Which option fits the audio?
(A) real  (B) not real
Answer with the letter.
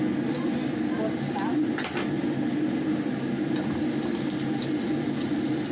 A